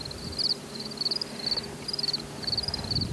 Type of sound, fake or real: real